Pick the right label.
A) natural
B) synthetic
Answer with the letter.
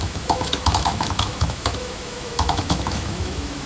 B